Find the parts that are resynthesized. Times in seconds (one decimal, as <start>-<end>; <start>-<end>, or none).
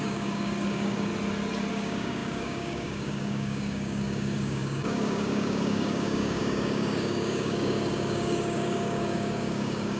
0.0-1.1; 1.7-10.0